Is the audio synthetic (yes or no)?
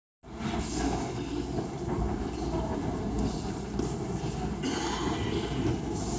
no